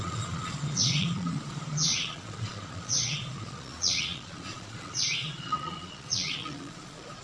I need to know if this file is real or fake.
fake